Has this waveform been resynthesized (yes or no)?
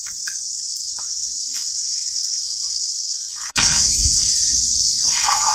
yes